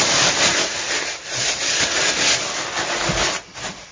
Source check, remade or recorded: recorded